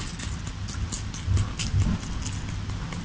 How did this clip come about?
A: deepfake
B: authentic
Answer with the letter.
B